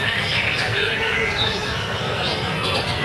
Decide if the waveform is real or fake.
fake